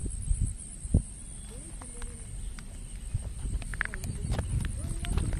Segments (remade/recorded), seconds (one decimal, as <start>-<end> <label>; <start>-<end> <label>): 0.0-5.4 recorded